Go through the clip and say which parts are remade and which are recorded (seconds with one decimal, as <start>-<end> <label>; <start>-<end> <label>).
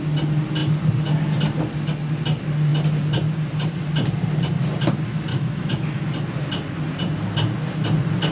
0.0-5.3 recorded; 5.3-6.0 remade; 6.0-8.3 recorded